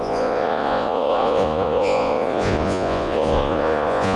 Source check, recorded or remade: remade